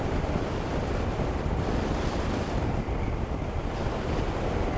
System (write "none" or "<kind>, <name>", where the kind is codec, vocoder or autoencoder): vocoder, BigVGAN v2